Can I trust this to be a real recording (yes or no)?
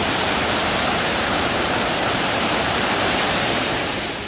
no